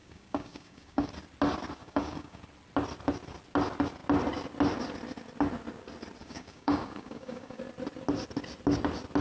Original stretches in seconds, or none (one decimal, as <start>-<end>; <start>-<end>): 1.1-1.8; 2.4-6.2; 7.6-9.2